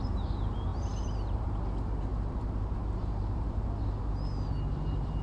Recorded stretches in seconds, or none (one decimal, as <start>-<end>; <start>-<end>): 0.0-0.7; 1.5-2.1; 4.0-5.2